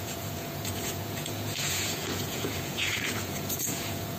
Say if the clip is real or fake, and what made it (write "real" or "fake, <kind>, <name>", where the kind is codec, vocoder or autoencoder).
fake, vocoder, Vocos